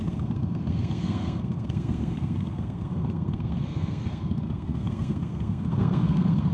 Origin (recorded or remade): remade